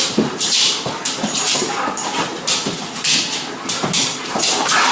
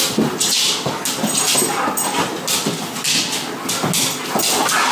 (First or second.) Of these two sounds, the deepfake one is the first